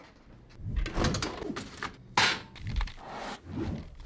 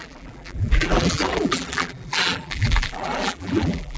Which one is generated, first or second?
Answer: second